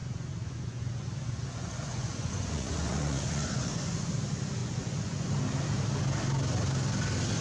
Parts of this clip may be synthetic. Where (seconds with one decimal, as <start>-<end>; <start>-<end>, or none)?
0.0-4.1; 4.6-5.3